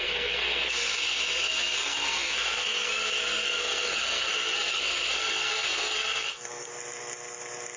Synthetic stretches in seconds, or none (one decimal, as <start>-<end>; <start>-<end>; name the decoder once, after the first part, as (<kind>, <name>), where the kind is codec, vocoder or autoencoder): 0.0-6.7 (codec, SNAC)

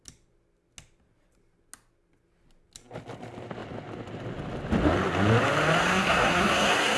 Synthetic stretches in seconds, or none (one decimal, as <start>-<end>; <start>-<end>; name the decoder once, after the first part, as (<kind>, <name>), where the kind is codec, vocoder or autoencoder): 5.8-7.0 (codec, SNAC)

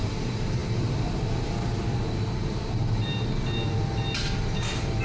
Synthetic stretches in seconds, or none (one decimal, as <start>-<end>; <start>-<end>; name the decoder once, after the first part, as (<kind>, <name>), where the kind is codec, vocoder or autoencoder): none

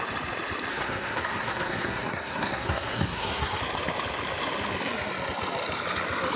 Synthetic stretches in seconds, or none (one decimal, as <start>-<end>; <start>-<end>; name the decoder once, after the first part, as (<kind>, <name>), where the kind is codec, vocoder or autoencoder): 0.7-3.6 (codec, SNAC)